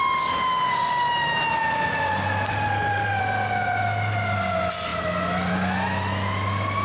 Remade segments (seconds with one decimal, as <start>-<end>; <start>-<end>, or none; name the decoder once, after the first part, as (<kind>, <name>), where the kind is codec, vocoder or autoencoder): 2.5-3.2 (autoencoder, DAC-VAE)